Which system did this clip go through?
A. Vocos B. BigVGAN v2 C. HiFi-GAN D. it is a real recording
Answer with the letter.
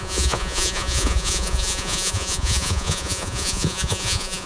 A